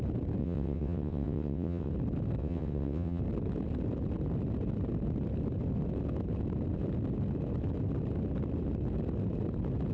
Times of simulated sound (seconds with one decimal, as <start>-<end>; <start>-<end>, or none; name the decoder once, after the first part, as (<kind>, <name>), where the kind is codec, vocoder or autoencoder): 0.4-1.9 (vocoder, WaveNeXt); 2.4-3.2